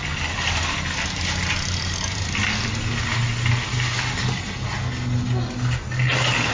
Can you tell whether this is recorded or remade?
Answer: recorded